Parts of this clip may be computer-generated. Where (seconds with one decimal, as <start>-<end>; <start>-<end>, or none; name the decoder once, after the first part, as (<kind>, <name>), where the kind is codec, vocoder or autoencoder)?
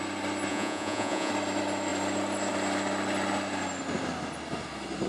0.5-1.3 (vocoder, Vocos)